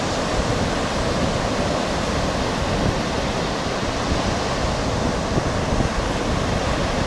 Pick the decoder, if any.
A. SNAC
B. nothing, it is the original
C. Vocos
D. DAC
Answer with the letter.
B